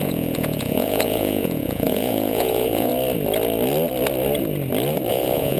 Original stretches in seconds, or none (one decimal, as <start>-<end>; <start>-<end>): 2.9-5.1